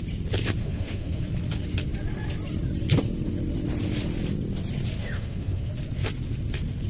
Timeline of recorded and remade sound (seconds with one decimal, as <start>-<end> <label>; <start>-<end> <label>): 0.0-0.6 recorded; 0.6-1.2 remade; 1.2-5.0 recorded; 5.0-5.7 remade; 5.7-6.9 recorded